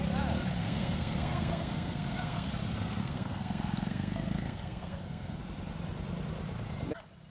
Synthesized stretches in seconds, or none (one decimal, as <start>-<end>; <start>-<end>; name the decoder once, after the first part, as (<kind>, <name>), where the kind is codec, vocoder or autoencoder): 0.6-2.5 (codec, SNAC); 3.0-5.4